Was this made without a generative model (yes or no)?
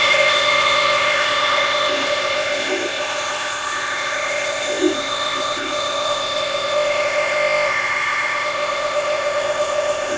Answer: no